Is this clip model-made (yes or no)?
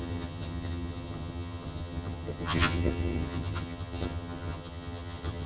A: yes